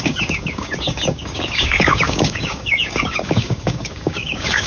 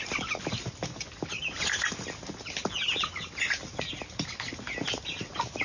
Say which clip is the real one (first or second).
second